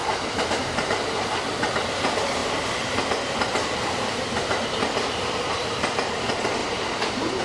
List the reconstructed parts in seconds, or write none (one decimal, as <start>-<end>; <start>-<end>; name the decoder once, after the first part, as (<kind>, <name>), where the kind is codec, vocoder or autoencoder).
0.0-1.0 (vocoder, BigVGAN v2); 2.4-6.1; 6.6-7.4